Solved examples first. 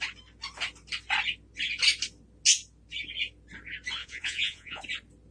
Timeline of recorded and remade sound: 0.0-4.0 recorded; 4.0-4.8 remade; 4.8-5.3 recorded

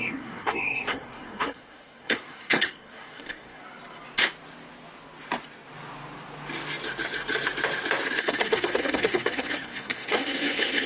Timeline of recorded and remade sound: 0.0-3.6 remade; 3.6-8.2 recorded; 8.2-10.9 remade